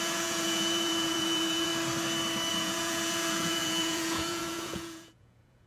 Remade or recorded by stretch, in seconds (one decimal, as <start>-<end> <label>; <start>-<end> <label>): 0.0-1.7 remade; 1.7-2.5 recorded; 2.5-5.7 remade